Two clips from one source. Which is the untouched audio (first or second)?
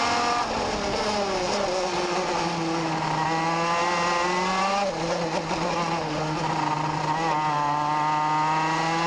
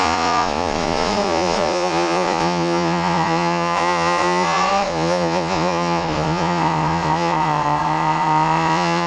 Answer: first